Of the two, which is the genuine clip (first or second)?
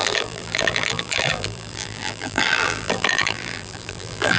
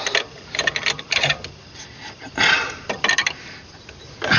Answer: second